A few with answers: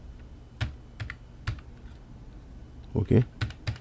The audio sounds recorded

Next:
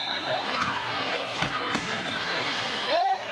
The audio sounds remade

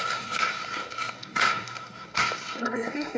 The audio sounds remade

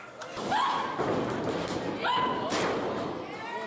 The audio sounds recorded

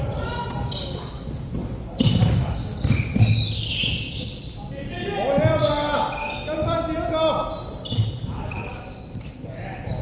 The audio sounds recorded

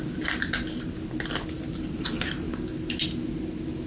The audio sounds recorded